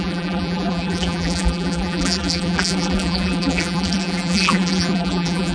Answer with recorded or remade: remade